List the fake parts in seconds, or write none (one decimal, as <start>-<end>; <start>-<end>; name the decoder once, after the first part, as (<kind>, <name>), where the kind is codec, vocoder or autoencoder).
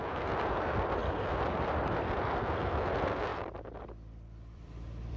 1.0-1.8 (vocoder, BigVGAN v2); 3.3-5.2